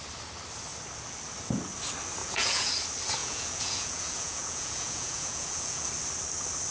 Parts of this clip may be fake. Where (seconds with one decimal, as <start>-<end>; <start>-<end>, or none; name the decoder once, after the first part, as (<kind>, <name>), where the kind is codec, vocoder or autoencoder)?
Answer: 2.2-2.7 (vocoder, Vocos); 3.2-5.9